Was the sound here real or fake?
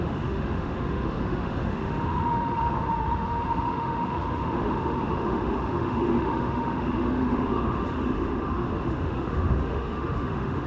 fake